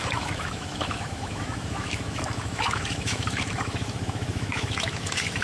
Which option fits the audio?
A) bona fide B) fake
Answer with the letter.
B